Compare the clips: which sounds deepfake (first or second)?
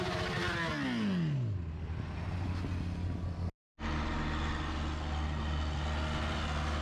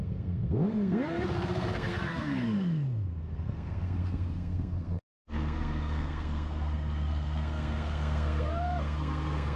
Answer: second